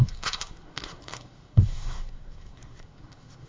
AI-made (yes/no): yes